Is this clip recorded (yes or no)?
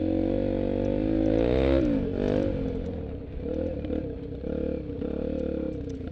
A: yes